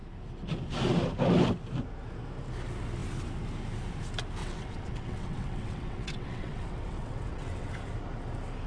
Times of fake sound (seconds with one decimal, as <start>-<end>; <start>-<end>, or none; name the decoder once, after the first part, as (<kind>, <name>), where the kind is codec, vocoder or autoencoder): 4.4-7.7 (vocoder, WaveNeXt)